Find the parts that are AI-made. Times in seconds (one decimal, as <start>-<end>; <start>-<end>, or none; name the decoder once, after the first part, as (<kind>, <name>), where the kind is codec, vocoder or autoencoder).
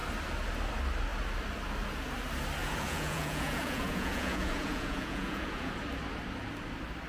2.6-5.7 (vocoder, Vocos)